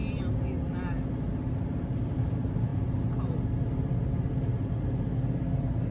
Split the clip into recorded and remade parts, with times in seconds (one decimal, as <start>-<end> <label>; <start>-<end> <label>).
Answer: 0.0-5.9 recorded